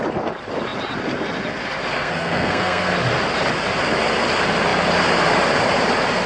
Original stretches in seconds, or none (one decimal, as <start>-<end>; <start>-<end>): 0.0-1.9; 2.9-6.3